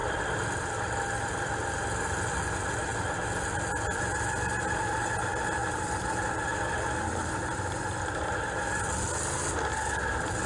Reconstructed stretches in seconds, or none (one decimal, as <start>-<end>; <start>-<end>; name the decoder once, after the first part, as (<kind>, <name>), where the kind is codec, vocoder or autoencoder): none